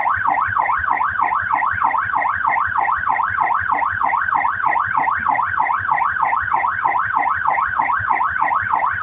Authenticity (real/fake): fake